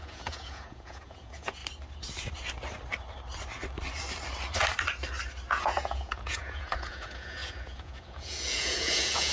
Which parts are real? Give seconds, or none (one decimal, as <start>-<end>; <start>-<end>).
1.6-5.5